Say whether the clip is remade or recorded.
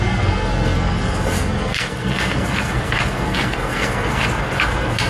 remade